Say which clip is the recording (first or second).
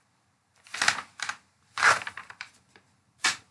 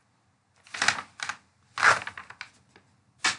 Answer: second